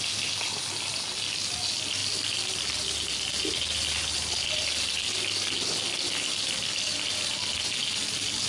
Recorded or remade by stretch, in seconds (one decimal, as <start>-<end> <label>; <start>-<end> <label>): 0.0-8.5 recorded